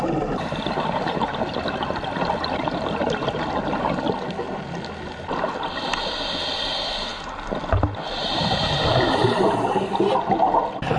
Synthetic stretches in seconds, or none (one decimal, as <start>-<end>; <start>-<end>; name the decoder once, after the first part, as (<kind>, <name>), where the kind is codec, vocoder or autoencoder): none